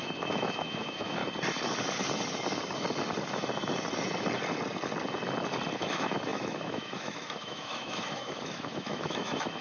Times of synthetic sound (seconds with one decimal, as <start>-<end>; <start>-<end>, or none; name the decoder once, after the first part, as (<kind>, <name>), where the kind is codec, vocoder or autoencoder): 0.0-1.2 (autoencoder, DAC-VAE); 5.7-9.6